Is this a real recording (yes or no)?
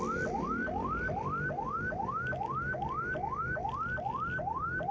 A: yes